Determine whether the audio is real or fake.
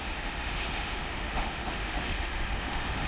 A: fake